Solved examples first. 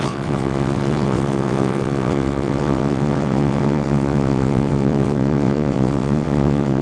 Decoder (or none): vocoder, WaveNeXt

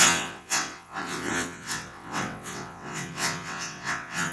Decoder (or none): vocoder, WaveNeXt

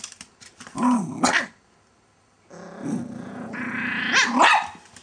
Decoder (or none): none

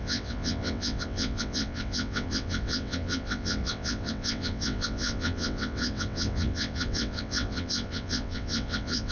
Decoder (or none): vocoder, WaveNeXt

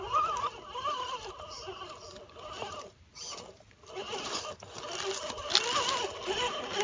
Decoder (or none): none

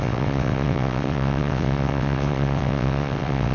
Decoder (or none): vocoder, WaveNeXt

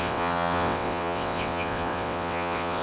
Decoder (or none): vocoder, WaveNeXt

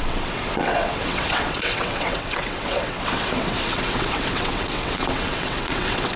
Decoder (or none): vocoder, WaveNeXt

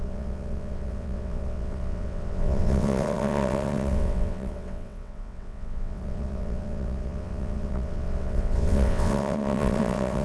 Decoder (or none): vocoder, WaveNeXt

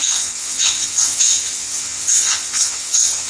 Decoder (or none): vocoder, WaveNeXt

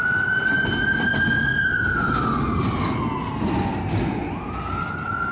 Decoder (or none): none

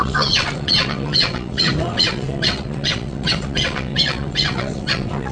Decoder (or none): vocoder, WaveNeXt